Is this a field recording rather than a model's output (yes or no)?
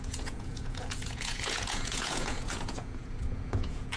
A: no